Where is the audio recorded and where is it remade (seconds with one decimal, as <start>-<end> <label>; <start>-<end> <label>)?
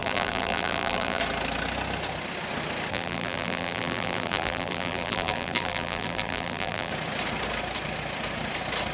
0.0-1.2 remade; 1.2-2.9 recorded; 2.9-6.9 remade; 6.9-8.9 recorded